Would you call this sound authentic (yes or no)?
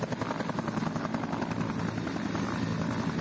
yes